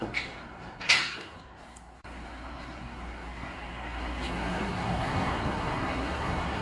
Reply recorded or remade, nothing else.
remade